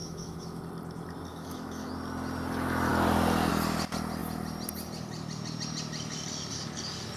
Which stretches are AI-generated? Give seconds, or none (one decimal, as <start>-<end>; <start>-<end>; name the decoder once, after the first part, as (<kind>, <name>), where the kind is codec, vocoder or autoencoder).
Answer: 0.0-0.6 (autoencoder, DAC-VAE); 1.3-1.9